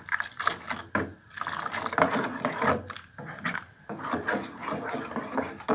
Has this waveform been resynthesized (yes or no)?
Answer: no